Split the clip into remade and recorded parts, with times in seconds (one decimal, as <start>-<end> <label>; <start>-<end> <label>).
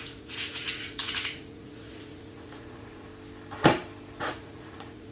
0.0-3.1 remade; 3.1-4.2 recorded; 4.2-5.1 remade